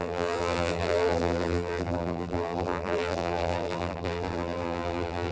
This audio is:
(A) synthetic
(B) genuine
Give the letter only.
A